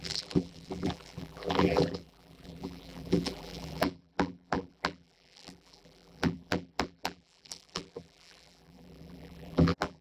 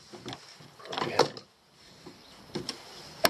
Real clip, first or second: second